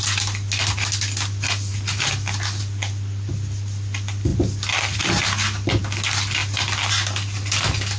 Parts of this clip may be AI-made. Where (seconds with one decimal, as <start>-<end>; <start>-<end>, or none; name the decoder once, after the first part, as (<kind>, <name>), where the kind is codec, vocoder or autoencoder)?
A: none

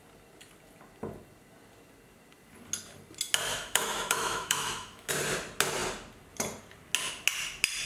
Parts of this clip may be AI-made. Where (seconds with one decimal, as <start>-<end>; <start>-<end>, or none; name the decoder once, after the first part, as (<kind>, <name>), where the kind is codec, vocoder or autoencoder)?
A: 3.5-5.1 (autoencoder, DAC-VAE)

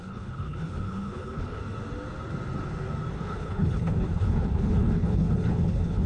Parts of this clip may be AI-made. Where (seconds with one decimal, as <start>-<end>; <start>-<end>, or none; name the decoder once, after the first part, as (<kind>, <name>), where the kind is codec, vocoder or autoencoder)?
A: 0.0-1.6 (codec, HILCodec); 3.1-6.1

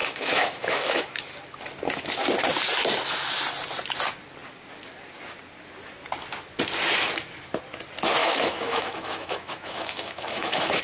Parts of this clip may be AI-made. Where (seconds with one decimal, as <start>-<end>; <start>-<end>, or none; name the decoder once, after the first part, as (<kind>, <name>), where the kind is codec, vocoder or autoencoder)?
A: 0.0-1.0 (autoencoder, DAC-VAE); 8.2-10.8

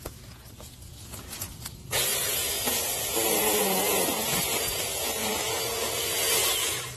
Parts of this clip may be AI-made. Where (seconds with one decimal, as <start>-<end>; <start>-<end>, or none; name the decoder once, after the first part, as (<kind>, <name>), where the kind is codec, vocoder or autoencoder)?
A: 0.0-7.0 (vocoder, Vocos)

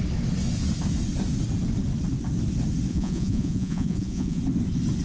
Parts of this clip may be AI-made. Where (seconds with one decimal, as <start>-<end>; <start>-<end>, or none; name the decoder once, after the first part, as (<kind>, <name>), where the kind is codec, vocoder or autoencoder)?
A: 2.9-4.4 (vocoder, Vocos)

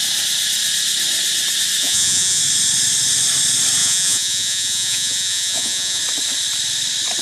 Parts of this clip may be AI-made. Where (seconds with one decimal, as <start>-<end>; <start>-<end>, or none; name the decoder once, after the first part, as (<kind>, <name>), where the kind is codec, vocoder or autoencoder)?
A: 1.8-2.4 (vocoder, Vocos); 3.8-6.0